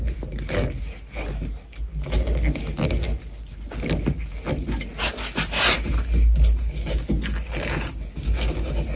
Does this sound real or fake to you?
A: real